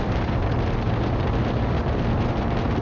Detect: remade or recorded recorded